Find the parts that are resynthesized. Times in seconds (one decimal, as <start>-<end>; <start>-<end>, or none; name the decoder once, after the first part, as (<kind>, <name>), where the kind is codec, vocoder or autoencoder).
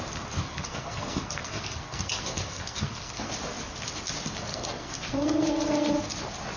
0.4-3.3 (codec, SNAC); 4.5-5.9